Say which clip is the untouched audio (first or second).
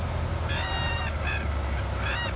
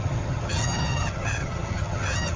first